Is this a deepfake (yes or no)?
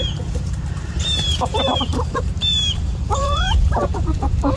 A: yes